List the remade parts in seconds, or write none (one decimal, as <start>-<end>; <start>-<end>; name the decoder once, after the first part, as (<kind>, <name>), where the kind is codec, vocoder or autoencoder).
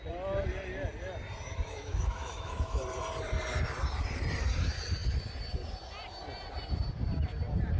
1.6-2.8 (autoencoder, DAC-VAE)